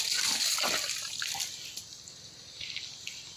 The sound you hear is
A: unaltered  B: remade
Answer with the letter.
A